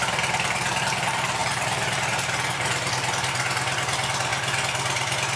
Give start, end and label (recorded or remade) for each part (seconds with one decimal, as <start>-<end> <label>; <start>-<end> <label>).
0.0-5.4 recorded